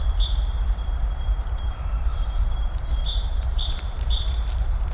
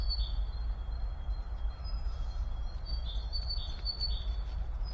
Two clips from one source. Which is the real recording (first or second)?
second